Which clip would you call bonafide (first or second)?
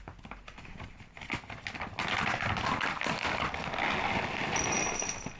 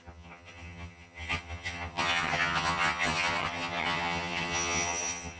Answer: first